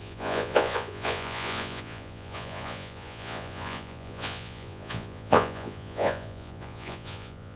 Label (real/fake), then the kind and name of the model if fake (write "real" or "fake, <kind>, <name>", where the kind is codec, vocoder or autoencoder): fake, vocoder, Vocos